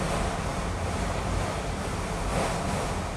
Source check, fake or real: real